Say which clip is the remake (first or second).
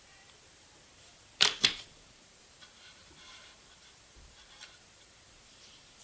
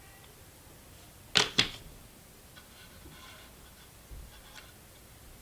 first